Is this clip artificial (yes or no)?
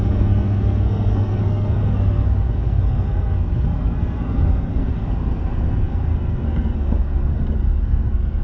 yes